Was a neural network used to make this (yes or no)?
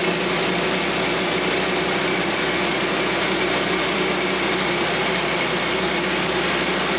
no